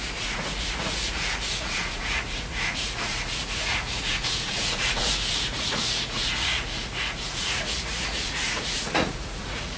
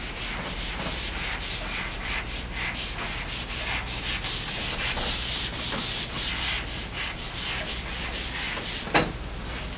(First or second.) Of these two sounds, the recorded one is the second